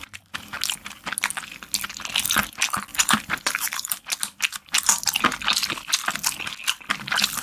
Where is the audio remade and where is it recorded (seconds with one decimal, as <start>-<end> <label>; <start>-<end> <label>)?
0.0-2.9 recorded; 2.9-4.0 remade; 4.0-7.4 recorded